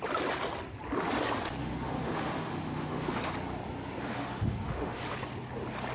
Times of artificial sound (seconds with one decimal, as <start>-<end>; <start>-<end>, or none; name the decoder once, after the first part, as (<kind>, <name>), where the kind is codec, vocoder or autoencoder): 1.6-3.3 (autoencoder, DAC-VAE); 4.0-5.0